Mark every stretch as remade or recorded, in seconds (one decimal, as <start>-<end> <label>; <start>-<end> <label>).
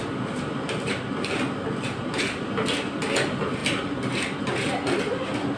0.0-5.6 recorded